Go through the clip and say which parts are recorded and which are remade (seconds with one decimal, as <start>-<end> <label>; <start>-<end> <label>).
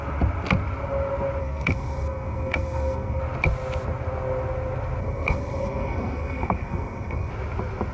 0.0-1.4 recorded; 1.4-3.2 remade; 3.2-5.0 recorded; 5.0-7.3 remade; 7.3-7.9 recorded